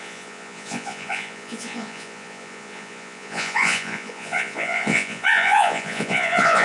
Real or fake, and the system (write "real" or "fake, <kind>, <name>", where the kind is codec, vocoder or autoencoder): fake, vocoder, Vocos